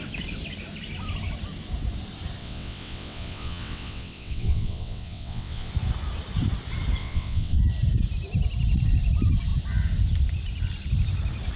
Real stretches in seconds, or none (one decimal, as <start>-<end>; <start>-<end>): 0.0-2.4; 5.7-7.0; 7.6-11.6